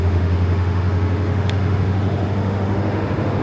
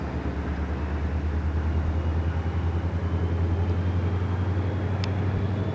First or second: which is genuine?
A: second